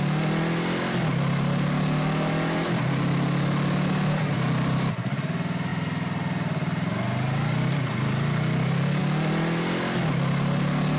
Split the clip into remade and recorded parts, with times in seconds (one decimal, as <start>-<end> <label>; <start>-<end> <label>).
0.0-11.0 recorded